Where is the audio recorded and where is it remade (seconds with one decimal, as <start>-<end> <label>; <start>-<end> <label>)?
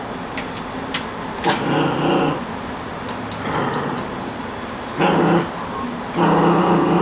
0.0-2.9 recorded; 2.9-4.4 remade; 4.4-7.0 recorded